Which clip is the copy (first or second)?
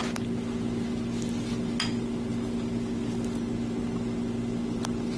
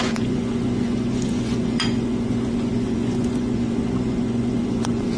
second